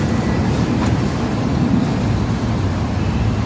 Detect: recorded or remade recorded